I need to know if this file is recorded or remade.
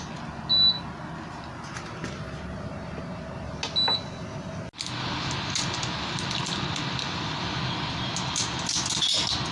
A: recorded